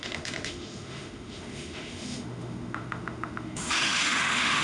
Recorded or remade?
remade